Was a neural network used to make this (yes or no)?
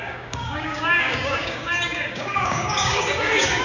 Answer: yes